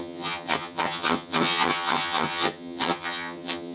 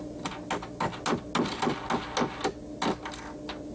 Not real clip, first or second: first